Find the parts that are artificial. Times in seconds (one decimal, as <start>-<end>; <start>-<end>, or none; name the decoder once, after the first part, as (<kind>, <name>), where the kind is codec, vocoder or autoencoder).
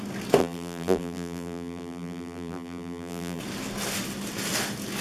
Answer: 0.4-3.4 (vocoder, BigVGAN v2)